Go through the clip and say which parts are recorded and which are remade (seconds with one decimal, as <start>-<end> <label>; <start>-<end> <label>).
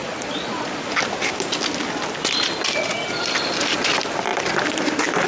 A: 0.0-0.8 remade; 0.8-5.3 recorded